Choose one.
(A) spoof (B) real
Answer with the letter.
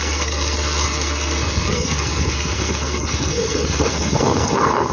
A